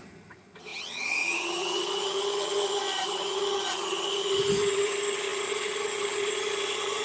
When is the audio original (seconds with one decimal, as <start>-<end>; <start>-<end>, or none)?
none

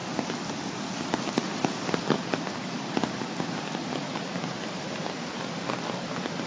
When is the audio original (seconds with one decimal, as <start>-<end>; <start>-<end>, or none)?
0.0-6.5